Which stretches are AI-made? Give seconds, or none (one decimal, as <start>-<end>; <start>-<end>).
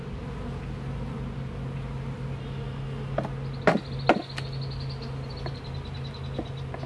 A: none